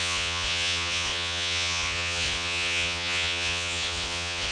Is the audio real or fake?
fake